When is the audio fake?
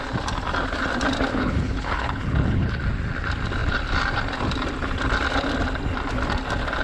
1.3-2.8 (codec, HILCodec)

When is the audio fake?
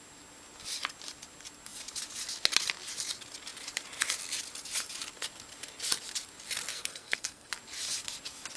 6.7-7.5 (codec, SNAC)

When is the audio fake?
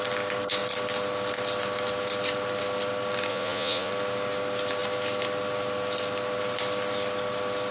3.3-3.9 (vocoder, Vocos)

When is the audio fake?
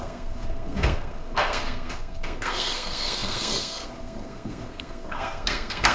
0.0-5.9 (codec, SNAC)